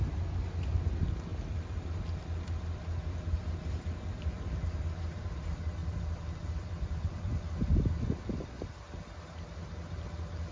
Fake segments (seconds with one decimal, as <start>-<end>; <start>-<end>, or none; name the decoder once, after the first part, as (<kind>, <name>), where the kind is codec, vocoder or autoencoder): 1.3-4.2 (vocoder, BigVGAN v2); 5.8-7.3